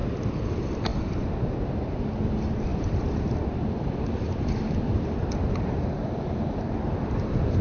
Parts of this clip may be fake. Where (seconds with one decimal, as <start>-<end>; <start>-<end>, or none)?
0.0-0.5; 0.9-2.0; 2.7-7.6